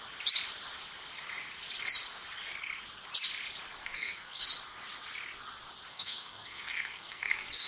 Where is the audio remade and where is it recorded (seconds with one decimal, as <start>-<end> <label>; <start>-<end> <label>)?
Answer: 0.0-3.8 recorded; 3.8-4.4 remade; 4.4-5.9 recorded; 5.9-7.7 remade